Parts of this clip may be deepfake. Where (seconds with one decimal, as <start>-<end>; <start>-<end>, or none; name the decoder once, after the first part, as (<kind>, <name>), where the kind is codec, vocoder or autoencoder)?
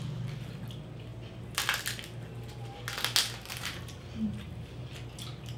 3.5-4.9 (vocoder, BigVGAN v2)